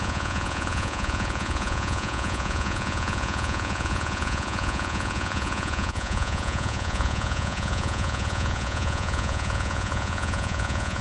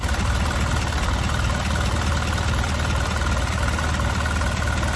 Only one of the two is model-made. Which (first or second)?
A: first